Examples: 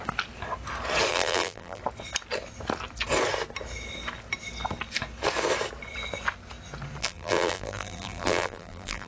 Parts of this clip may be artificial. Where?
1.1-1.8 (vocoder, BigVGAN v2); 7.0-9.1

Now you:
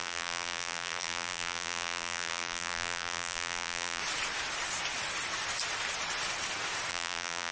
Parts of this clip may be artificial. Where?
0.0-4.0 (vocoder, BigVGAN v2); 6.9-7.5

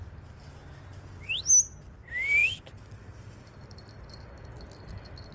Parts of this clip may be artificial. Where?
2.4-4.1 (vocoder, BigVGAN v2)

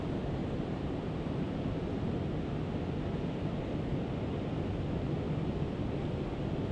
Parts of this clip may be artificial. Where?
0.4-1.0 (vocoder, BigVGAN v2)

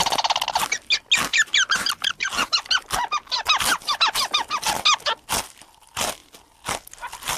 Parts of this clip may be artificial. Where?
1.3-2.5 (vocoder, BigVGAN v2)

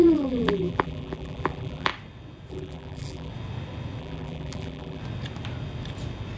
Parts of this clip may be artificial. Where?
0.0-1.9 (vocoder, BigVGAN v2); 2.5-3.3; 4.0-5.0

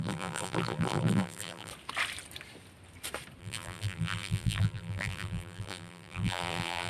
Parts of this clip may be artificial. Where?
0.0-1.7 (vocoder, BigVGAN v2); 3.4-6.9

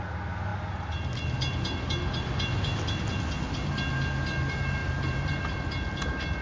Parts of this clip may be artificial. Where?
4.8-5.4 (vocoder, BigVGAN v2)